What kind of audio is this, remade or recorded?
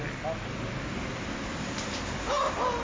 recorded